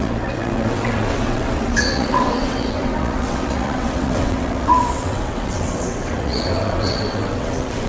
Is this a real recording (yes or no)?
no